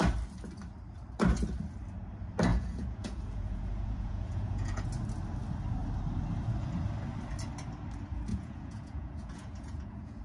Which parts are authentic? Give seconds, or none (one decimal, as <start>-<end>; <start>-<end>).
0.0-2.5; 4.8-8.3